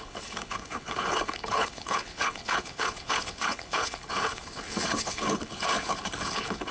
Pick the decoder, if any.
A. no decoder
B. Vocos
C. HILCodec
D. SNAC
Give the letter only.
C